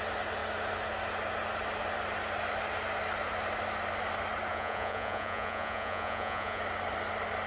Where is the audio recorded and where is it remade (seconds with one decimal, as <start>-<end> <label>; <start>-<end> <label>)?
0.0-4.5 recorded; 4.5-6.6 remade; 6.6-7.5 recorded